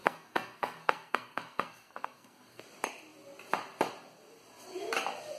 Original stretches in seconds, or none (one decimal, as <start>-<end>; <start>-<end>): 2.6-5.4